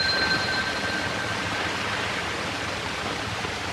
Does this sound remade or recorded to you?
remade